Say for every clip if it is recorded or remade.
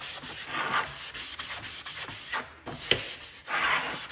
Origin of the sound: recorded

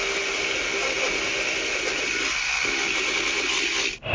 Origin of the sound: recorded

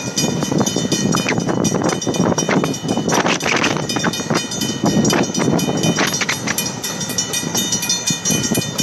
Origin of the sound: recorded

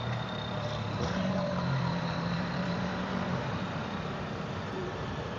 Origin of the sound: remade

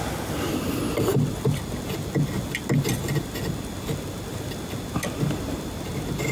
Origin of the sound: recorded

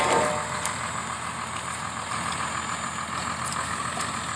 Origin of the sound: recorded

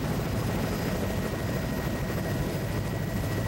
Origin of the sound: recorded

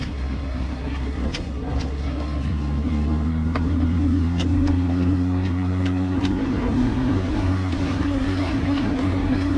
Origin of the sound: remade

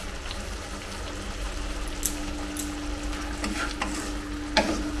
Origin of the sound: recorded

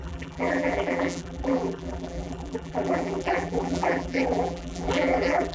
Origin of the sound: remade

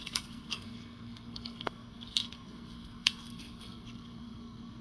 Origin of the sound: remade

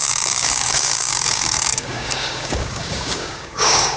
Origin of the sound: remade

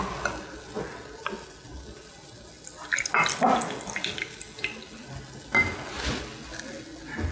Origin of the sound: recorded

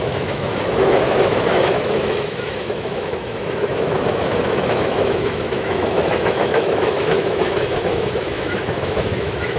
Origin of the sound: remade